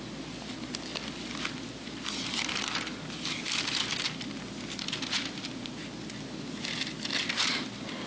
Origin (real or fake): real